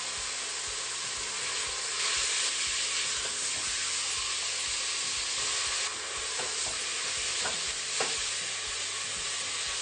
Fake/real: real